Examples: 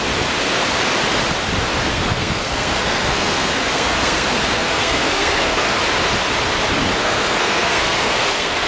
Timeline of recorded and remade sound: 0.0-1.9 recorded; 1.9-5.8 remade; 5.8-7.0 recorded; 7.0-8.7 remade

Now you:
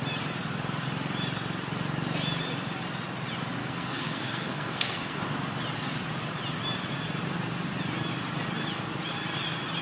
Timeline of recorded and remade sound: 0.0-3.6 recorded; 3.6-5.2 remade; 5.2-9.8 recorded

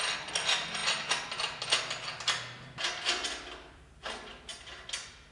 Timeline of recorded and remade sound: 0.0-5.3 recorded

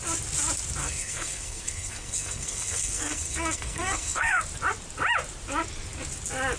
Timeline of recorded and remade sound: 0.0-0.8 recorded; 0.8-4.4 remade; 4.4-6.6 recorded